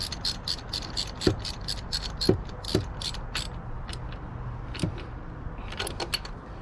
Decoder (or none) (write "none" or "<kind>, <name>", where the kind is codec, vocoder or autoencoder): none